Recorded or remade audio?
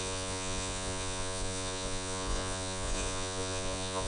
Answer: remade